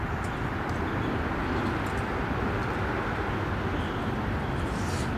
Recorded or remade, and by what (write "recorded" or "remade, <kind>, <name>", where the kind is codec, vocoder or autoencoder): recorded